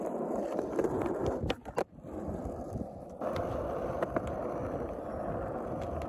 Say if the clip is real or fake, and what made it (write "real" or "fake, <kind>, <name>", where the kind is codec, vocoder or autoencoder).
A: fake, vocoder, BigVGAN v2